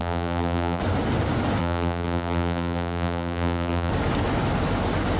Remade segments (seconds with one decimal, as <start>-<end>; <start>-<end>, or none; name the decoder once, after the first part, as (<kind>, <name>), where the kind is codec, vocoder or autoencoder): 0.0-0.8 (vocoder, BigVGAN v2); 1.6-3.9

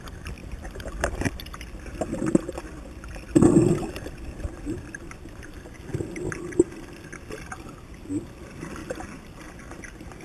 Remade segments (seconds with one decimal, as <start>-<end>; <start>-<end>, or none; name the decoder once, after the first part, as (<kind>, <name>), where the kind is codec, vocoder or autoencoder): none

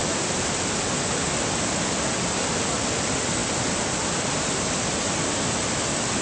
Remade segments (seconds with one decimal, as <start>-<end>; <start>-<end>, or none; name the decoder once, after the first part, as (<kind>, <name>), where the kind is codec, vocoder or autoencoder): none

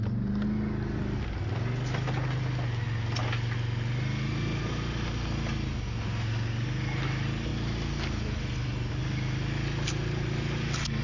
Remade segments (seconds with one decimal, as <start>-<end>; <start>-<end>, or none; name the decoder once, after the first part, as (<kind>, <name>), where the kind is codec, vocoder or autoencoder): none

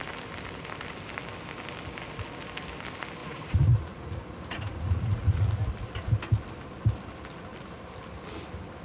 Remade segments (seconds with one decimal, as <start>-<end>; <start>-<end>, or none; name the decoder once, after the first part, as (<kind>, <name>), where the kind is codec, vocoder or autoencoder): 3.2-5.5 (vocoder, Vocos)

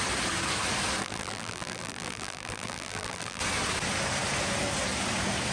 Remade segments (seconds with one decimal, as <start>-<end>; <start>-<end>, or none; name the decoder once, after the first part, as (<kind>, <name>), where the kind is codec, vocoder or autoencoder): 1.0-3.4 (vocoder, BigVGAN v2)